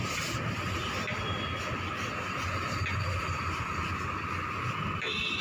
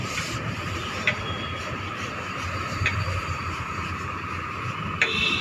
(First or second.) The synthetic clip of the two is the second